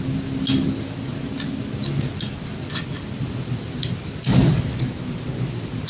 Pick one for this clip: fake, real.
real